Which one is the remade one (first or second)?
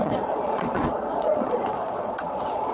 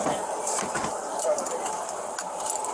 first